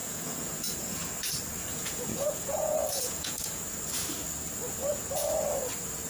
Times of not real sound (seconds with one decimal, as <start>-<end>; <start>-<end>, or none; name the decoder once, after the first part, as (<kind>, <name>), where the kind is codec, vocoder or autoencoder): 0.0-1.1 (vocoder, Vocos); 1.7-3.6